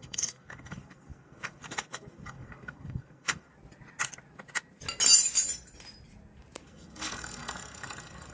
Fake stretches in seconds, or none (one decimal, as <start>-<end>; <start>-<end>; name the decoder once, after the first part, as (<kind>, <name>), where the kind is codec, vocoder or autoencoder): 0.0-3.5 (codec, SNAC); 6.6-8.3